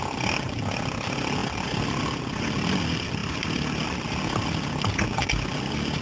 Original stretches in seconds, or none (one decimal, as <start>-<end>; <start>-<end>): 0.0-6.0